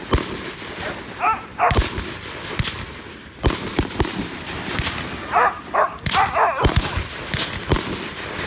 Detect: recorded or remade recorded